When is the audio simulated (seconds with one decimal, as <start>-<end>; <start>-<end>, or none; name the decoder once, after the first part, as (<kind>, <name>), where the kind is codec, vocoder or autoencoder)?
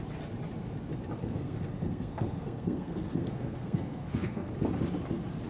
1.2-4.5 (codec, SNAC)